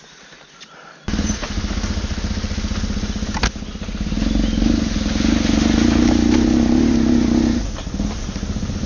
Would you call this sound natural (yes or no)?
yes